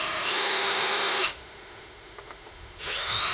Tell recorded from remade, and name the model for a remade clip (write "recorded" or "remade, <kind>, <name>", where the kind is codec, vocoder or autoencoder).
remade, autoencoder, DAC-VAE